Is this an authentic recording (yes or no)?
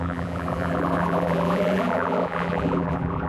no